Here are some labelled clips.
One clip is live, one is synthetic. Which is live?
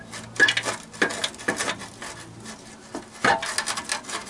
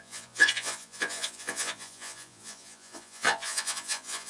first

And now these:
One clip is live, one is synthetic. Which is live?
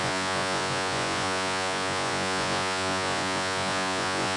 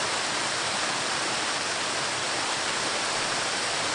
second